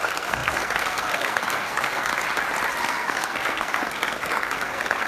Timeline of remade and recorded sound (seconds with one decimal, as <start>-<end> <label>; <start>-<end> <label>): 0.0-2.1 remade; 2.1-2.8 recorded; 2.8-5.1 remade